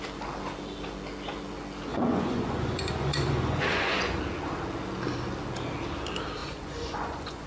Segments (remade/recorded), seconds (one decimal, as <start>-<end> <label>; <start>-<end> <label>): 0.0-1.9 recorded; 1.9-4.2 remade; 4.2-6.4 recorded; 6.4-7.5 remade